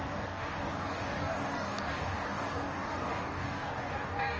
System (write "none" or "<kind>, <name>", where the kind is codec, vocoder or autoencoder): codec, DAC